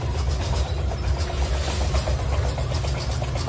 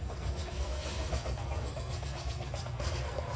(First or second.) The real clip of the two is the first